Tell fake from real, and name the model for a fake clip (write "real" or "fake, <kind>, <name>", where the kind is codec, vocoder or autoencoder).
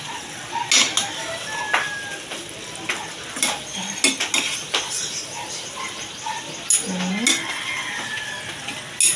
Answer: real